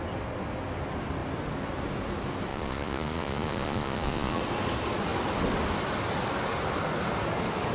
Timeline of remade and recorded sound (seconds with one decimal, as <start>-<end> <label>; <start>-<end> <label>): 0.0-2.5 recorded; 2.5-4.4 remade; 4.4-7.7 recorded